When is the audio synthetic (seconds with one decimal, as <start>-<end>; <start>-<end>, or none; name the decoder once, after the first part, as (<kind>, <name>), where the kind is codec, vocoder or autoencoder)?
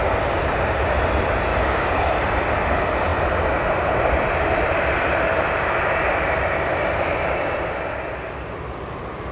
1.5-2.1 (codec, DAC)